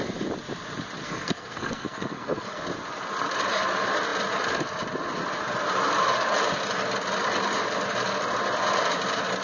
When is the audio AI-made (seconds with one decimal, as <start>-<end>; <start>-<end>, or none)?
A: 1.0-2.6